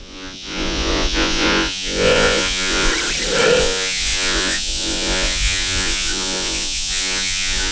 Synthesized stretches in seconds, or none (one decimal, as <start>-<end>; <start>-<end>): 0.0-2.9; 3.6-7.7

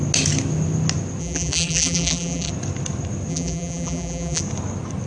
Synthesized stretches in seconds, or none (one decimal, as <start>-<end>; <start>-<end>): 1.2-2.5; 3.3-4.4

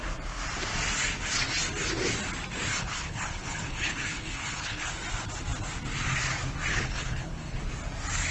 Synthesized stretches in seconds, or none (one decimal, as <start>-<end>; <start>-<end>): 2.7-4.9; 6.7-7.6

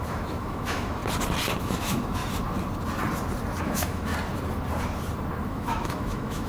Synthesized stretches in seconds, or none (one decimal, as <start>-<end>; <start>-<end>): 0.0-1.0; 1.6-2.2; 3.6-4.1; 5.5-6.5